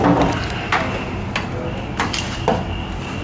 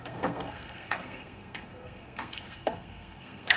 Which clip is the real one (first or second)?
first